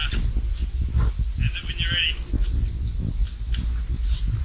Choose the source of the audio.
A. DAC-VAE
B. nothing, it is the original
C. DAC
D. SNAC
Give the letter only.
B